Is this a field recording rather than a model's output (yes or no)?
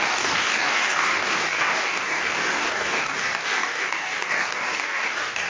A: no